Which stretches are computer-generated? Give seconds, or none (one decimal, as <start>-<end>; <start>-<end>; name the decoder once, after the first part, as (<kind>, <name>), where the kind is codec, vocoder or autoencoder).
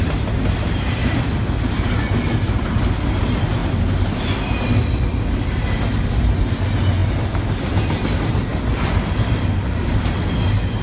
none